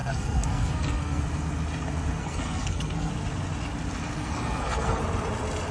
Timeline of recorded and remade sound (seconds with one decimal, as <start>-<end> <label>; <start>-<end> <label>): 0.0-1.2 remade; 1.2-2.2 recorded; 2.2-3.1 remade; 3.1-4.2 recorded; 4.2-5.0 remade; 5.0-5.7 recorded